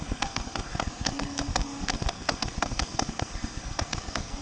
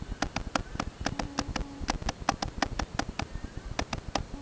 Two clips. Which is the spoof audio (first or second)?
first